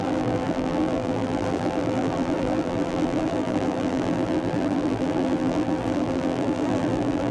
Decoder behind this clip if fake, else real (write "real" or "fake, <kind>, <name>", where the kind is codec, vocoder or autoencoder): fake, vocoder, BigVGAN v2